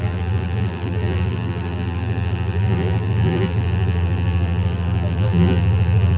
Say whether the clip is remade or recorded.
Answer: remade